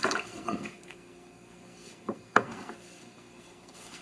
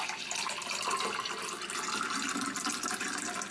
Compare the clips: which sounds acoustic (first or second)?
second